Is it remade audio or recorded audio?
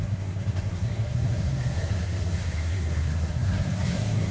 remade